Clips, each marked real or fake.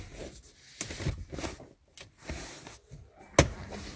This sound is real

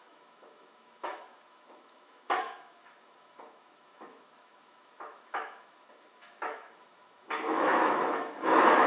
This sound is fake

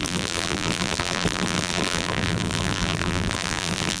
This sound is fake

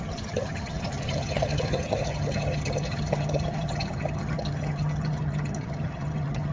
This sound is fake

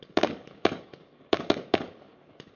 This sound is fake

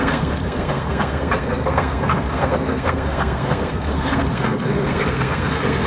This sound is fake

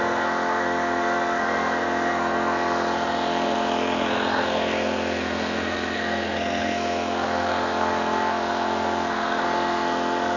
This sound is fake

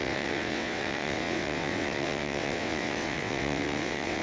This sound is fake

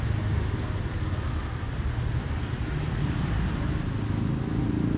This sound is real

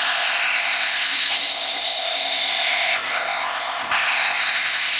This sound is fake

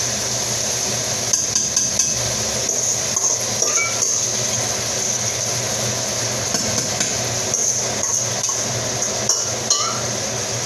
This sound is real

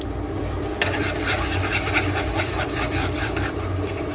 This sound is fake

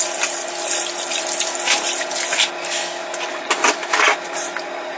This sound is real